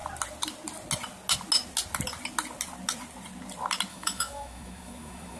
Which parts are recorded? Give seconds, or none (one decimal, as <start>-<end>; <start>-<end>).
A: 0.0-3.9